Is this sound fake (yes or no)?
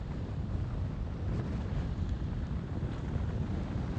no